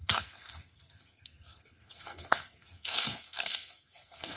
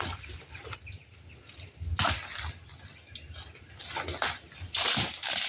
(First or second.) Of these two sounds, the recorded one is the second